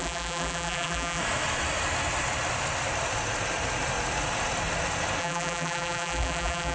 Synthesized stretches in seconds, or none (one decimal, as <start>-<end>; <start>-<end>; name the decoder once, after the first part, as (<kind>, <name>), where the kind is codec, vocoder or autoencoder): 0.0-1.2 (vocoder, BigVGAN v2); 5.2-6.7